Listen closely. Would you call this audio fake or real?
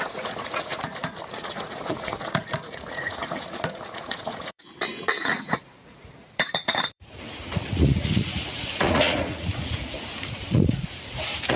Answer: fake